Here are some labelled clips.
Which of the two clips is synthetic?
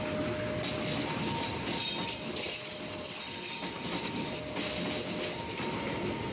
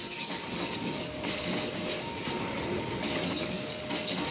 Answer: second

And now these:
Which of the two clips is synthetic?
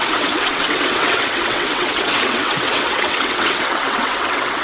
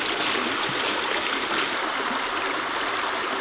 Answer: first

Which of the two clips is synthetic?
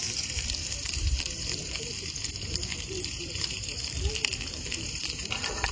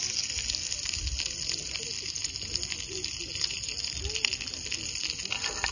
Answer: first